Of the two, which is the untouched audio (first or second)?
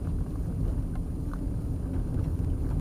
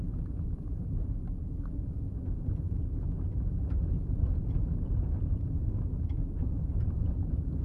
first